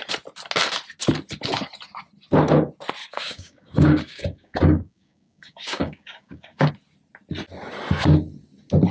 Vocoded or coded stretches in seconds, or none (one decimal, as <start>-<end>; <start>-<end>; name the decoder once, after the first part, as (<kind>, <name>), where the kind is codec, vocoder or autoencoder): 3.0-6.7 (codec, DAC)